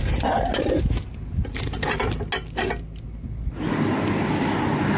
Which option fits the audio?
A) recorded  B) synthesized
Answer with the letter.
A